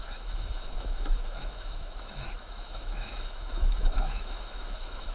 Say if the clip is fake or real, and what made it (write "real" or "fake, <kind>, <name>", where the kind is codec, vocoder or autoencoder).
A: fake, autoencoder, DAC-VAE